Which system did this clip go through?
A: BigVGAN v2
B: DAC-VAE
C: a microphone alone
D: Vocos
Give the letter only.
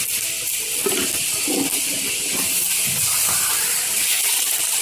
C